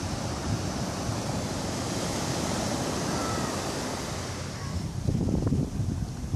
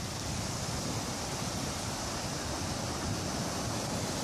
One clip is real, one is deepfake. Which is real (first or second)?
second